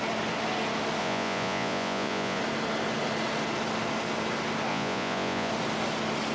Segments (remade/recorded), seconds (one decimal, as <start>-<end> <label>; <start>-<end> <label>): 0.0-1.0 recorded; 1.0-2.4 remade; 2.4-4.7 recorded; 4.7-5.5 remade; 5.5-6.3 recorded